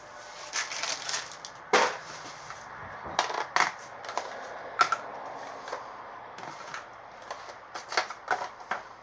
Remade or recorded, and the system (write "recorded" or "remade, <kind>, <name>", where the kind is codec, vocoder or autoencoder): recorded